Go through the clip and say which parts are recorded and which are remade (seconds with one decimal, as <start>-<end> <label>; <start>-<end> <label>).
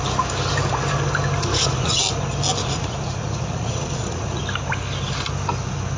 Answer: 0.0-1.5 recorded; 1.5-2.0 remade; 2.0-2.6 recorded; 2.6-4.4 remade; 4.4-6.0 recorded